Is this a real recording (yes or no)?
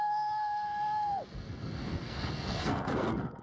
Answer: no